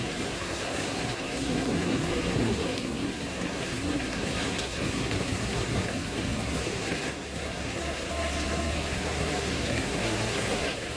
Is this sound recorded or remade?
remade